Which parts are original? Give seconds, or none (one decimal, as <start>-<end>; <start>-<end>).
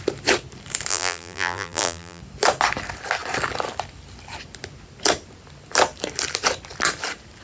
0.0-0.9; 2.2-7.4